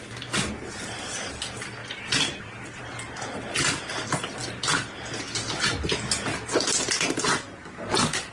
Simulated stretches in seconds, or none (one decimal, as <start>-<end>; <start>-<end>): none